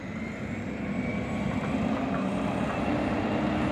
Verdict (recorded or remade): recorded